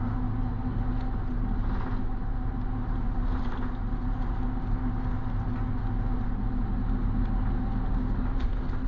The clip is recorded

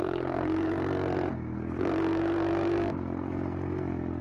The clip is remade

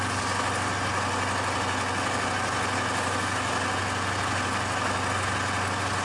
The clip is recorded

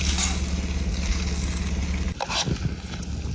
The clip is recorded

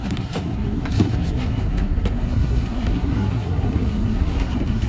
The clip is remade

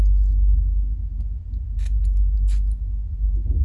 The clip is recorded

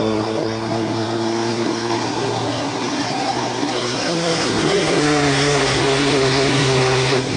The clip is remade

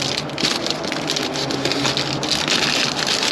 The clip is recorded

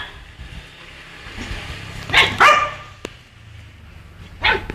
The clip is recorded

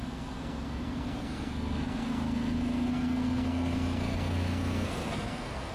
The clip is remade